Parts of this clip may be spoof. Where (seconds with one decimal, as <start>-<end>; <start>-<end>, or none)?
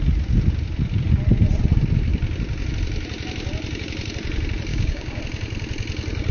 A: 4.7-5.2